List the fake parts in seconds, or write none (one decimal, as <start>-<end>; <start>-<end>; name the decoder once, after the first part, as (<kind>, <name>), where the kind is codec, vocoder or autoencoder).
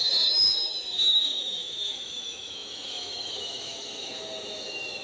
0.0-5.0 (autoencoder, DAC-VAE)